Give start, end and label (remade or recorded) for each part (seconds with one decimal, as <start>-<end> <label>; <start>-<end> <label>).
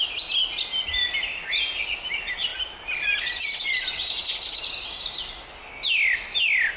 0.0-6.8 recorded